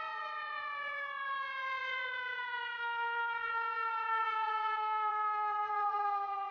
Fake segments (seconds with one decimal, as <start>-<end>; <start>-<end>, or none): 0.0-6.5